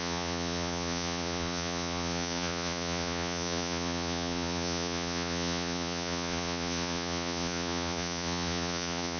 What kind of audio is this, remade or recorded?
remade